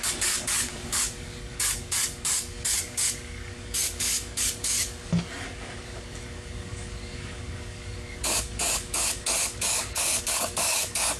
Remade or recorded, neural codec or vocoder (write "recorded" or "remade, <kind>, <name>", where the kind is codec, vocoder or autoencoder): remade, codec, DAC